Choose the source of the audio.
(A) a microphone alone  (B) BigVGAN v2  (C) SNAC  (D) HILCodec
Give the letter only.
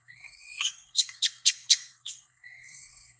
C